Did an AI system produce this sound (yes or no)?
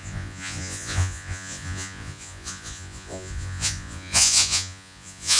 yes